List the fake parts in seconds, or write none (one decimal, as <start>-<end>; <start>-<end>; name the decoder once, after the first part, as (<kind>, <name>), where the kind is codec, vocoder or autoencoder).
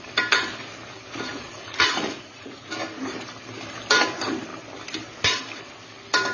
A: 1.3-2.7 (vocoder, Vocos)